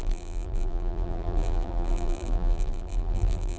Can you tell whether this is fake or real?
fake